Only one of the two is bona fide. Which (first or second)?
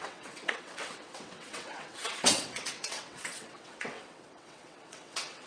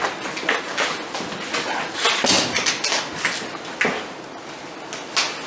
second